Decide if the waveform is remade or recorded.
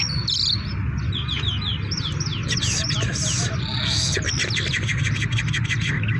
recorded